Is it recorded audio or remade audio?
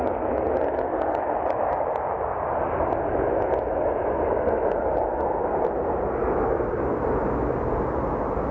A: recorded